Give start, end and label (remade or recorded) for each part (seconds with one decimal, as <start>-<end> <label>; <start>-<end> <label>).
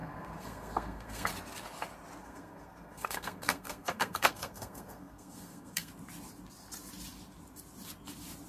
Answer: 0.0-1.3 remade; 1.3-2.2 recorded; 2.2-5.9 remade; 5.9-8.5 recorded